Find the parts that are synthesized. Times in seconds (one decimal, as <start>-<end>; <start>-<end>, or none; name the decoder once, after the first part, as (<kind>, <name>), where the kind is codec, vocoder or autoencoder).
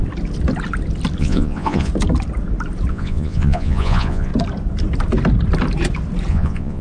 1.2-1.9 (vocoder, Vocos); 2.9-4.3; 6.3-6.8